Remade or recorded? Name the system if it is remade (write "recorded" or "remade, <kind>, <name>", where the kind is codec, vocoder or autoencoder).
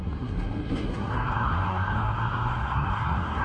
remade, codec, SNAC